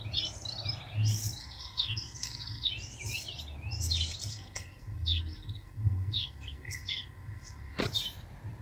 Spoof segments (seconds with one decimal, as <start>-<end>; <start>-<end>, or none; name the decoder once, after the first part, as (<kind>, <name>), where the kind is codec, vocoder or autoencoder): 1.4-2.7 (codec, SNAC); 4.3-7.8